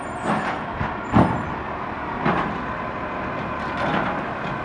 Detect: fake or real real